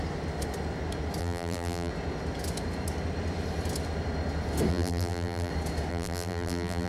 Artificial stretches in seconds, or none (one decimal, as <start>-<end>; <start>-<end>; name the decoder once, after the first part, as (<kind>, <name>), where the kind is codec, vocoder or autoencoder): 1.2-1.9 (vocoder, BigVGAN v2); 4.7-5.5; 5.9-6.9